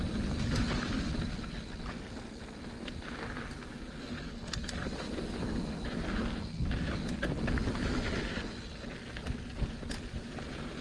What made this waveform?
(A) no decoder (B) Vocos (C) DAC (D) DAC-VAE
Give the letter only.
A